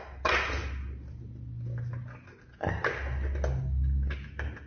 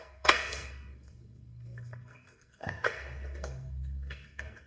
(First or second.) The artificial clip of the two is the second